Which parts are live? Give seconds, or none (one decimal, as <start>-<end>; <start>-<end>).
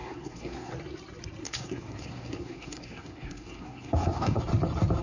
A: 0.7-1.4; 4.4-5.0